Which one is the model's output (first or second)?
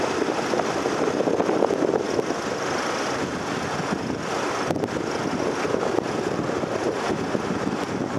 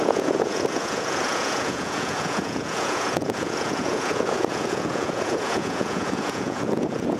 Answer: second